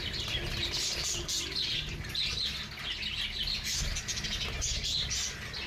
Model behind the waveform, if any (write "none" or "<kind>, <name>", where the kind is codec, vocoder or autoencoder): none